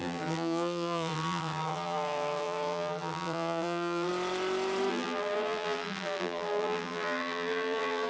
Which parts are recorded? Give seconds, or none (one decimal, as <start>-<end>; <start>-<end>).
4.1-4.9